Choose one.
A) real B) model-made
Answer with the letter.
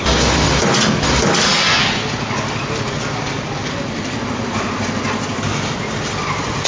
B